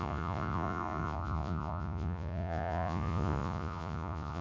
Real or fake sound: fake